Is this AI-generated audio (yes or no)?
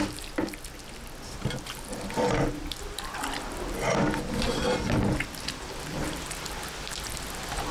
no